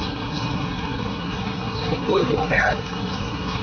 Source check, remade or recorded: remade